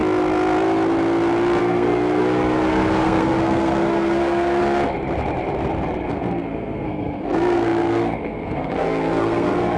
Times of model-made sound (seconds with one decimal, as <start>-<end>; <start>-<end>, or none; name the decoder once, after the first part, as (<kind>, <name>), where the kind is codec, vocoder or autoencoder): 1.6-4.6 (codec, SNAC); 6.1-9.8